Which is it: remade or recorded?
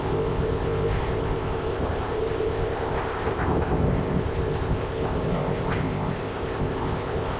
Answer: remade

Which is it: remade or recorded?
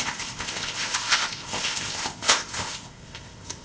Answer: remade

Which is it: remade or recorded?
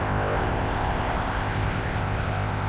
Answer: remade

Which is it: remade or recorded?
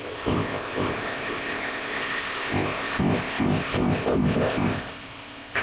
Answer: remade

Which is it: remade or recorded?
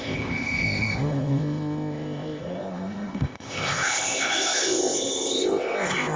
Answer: remade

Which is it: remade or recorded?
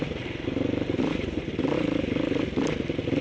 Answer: recorded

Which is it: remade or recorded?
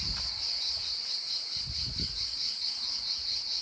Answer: recorded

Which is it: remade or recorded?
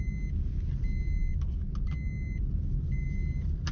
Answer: recorded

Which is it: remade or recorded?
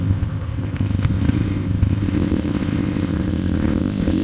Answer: remade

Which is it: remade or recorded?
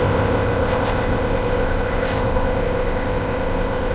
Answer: remade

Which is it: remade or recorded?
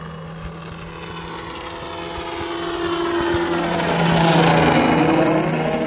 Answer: recorded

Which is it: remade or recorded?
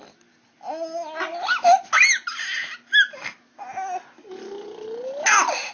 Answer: recorded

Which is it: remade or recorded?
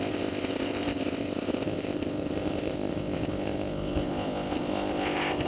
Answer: remade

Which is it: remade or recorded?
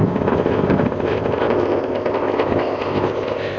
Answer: remade